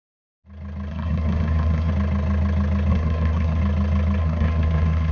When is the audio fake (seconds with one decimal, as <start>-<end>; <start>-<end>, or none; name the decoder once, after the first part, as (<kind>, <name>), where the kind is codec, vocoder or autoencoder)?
0.9-1.9 (codec, SNAC); 2.9-3.6; 4.2-5.1